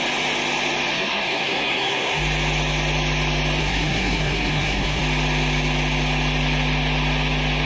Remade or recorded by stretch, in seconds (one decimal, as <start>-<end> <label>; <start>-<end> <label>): 0.0-0.9 recorded; 0.9-2.2 remade; 2.2-3.6 recorded; 3.6-5.0 remade; 5.0-7.7 recorded